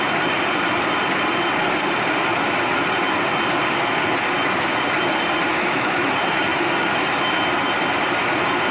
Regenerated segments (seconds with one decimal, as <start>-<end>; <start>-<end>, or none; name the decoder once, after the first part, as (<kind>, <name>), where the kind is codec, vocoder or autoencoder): 5.5-6.1 (autoencoder, DAC-VAE)